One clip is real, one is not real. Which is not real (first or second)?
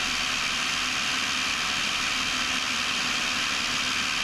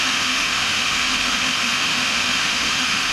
second